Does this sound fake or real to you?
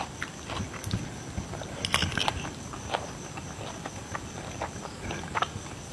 fake